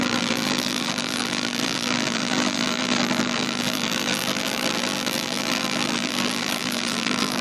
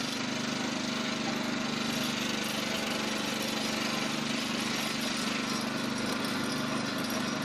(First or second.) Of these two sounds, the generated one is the first